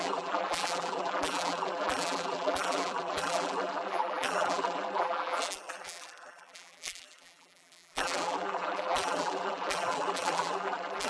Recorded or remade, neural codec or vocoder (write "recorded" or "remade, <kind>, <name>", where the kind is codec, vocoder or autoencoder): remade, vocoder, BigVGAN v2